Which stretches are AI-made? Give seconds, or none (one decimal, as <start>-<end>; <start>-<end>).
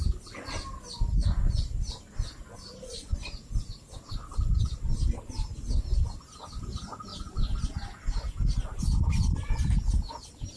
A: none